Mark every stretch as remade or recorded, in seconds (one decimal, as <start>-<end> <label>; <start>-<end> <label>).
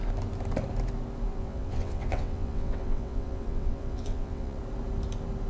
0.0-1.3 recorded; 1.3-4.6 remade; 4.6-5.5 recorded